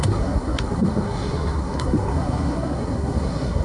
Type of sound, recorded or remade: remade